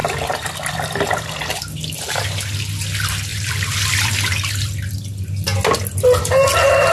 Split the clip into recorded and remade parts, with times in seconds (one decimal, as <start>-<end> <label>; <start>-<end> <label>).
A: 0.0-1.5 remade; 1.5-3.3 recorded; 3.3-4.4 remade; 4.4-6.9 recorded